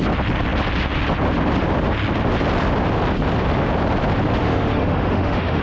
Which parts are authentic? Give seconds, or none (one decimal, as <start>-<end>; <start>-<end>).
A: 0.0-4.4